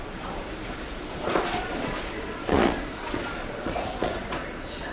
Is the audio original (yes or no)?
no